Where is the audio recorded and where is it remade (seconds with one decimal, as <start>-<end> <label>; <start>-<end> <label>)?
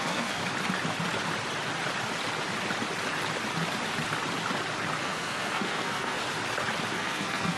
0.0-0.4 remade; 0.4-5.0 recorded; 5.0-6.2 remade; 6.2-6.9 recorded; 6.9-7.6 remade